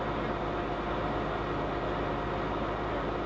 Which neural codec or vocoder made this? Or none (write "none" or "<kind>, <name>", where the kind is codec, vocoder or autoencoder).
none